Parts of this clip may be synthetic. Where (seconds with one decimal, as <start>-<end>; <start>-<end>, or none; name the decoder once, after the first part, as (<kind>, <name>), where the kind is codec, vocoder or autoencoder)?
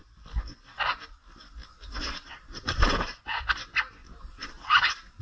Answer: 1.6-3.2 (vocoder, BigVGAN v2); 4.0-5.2